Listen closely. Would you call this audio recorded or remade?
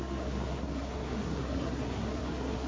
remade